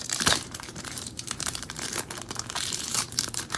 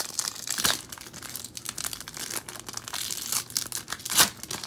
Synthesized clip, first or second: first